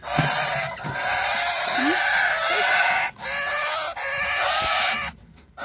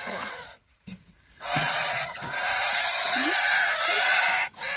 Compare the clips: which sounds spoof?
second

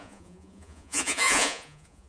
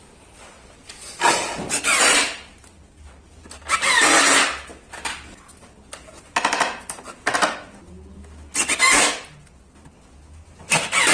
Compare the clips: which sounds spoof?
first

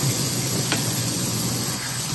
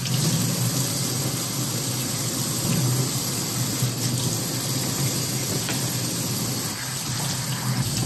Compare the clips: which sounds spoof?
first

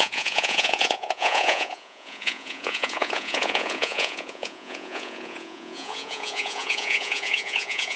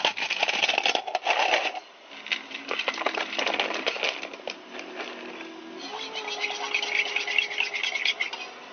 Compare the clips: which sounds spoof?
first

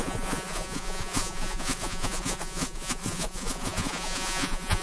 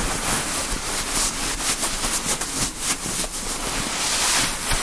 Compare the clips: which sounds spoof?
first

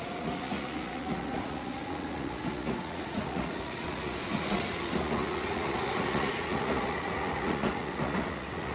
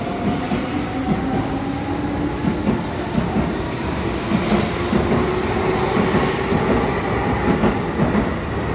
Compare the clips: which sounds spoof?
first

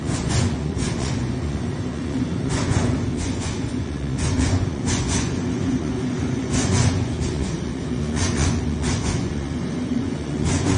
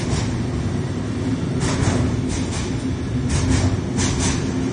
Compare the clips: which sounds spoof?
first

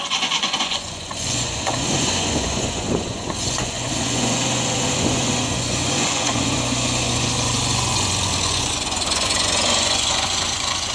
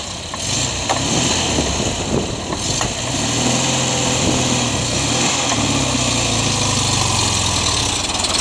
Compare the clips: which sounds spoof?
first